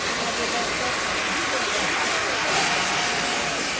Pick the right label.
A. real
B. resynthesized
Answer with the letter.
A